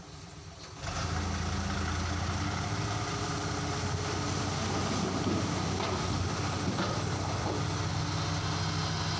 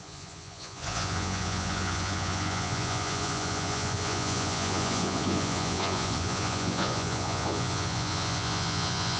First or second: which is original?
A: first